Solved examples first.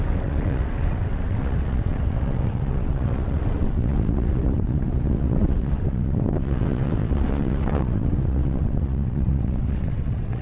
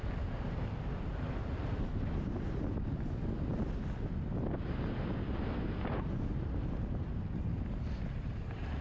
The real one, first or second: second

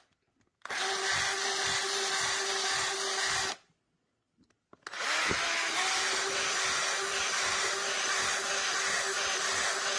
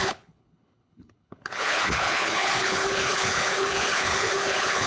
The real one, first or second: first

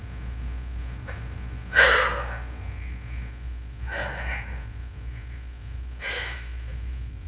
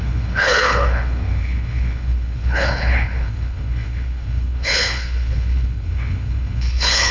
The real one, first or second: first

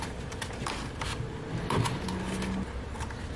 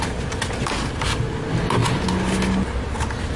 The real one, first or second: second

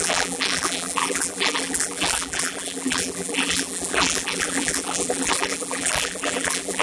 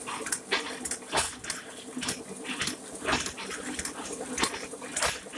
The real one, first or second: second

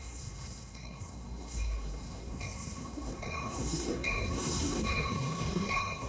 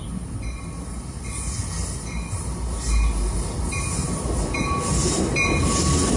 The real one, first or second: second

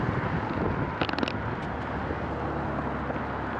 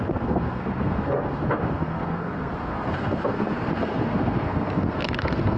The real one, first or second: first